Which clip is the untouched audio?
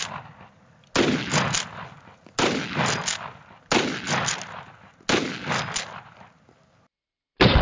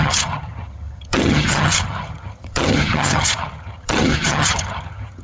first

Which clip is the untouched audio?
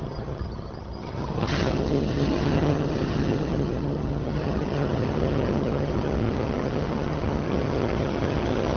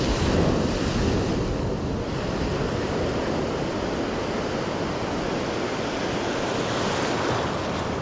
second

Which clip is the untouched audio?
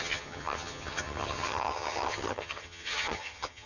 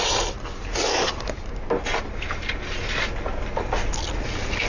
second